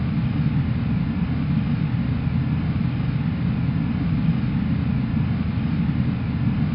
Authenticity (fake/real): real